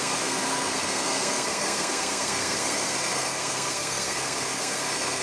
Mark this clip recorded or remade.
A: remade